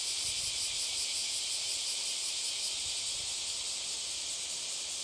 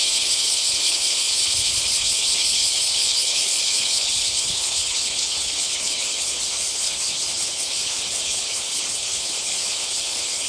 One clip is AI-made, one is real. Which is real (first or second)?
first